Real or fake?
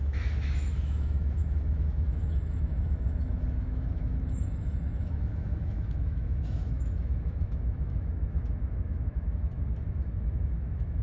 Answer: fake